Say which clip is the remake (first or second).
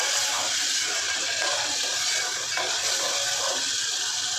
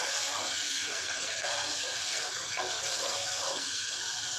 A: second